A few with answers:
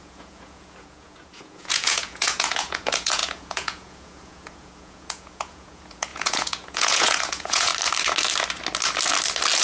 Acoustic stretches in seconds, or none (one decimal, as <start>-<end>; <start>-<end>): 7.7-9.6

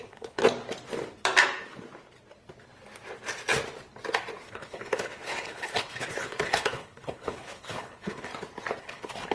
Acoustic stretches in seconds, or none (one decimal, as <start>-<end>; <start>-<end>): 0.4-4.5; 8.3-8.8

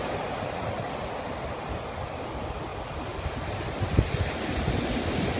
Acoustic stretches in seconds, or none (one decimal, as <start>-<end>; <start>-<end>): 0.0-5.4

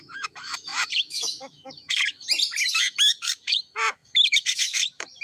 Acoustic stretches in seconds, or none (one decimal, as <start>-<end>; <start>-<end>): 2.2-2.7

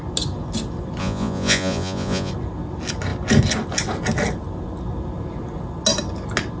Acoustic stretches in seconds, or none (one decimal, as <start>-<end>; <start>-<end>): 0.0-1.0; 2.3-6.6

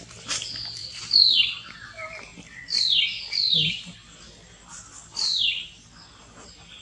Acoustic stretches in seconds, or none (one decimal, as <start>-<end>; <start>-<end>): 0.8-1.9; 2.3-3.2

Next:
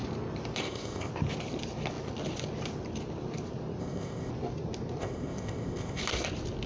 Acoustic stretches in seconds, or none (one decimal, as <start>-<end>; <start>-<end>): 0.0-0.6; 1.1-3.8; 4.3-5.0; 6.0-6.7

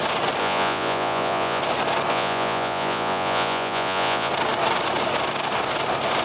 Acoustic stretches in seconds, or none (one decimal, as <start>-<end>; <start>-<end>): 0.0-0.4; 1.6-2.1; 4.3-6.2